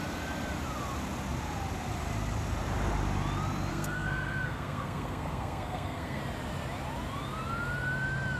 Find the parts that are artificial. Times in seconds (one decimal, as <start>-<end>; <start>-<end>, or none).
3.7-6.2